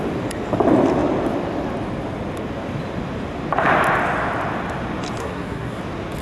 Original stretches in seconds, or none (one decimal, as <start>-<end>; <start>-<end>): 0.0-5.2; 5.8-6.2